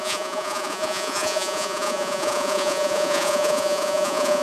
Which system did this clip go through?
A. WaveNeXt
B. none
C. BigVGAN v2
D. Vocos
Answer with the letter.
D